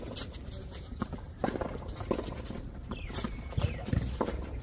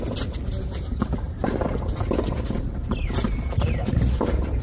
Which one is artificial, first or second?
first